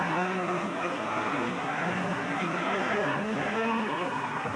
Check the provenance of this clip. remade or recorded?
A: remade